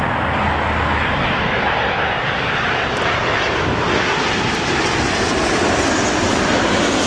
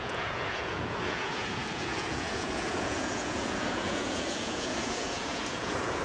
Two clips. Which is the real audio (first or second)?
first